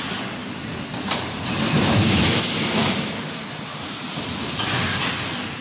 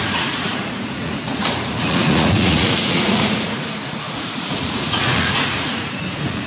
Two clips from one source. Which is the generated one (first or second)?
second